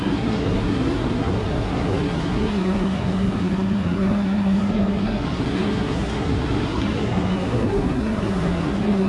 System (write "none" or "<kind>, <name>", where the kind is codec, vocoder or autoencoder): codec, SNAC